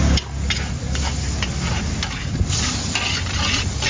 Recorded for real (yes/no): yes